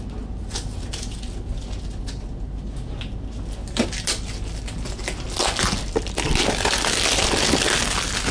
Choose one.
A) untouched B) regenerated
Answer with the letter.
A